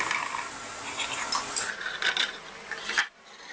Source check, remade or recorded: recorded